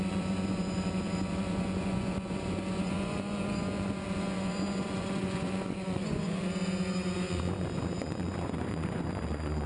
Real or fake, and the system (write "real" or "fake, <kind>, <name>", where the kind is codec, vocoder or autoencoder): fake, vocoder, Vocos